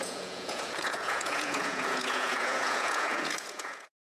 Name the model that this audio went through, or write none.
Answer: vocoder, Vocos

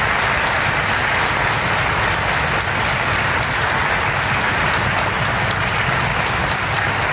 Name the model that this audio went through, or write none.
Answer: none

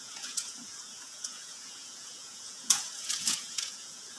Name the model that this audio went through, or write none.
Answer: vocoder, Vocos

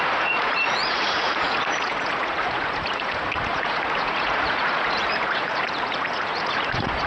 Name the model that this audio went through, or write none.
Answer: vocoder, Vocos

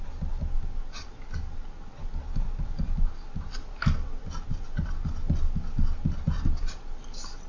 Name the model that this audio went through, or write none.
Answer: none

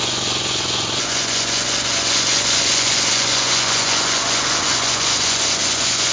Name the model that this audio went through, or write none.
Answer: vocoder, Vocos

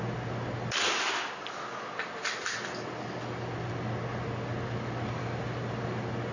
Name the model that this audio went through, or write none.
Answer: none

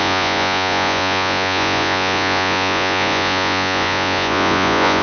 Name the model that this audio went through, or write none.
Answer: vocoder, Vocos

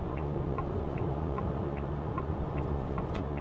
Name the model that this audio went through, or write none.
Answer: vocoder, Vocos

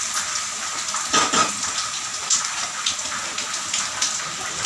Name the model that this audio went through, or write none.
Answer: none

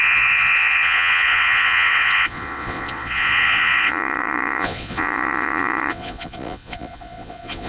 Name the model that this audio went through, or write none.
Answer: vocoder, Vocos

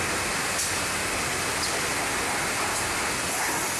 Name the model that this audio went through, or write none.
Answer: none